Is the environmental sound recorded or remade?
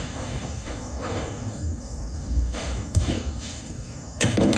remade